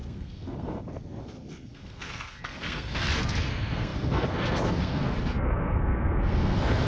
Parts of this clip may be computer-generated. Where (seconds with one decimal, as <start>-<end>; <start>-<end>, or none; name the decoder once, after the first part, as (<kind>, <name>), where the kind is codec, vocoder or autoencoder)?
0.0-6.9 (codec, SNAC)